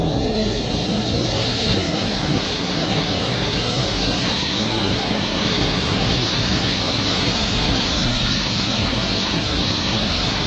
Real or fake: fake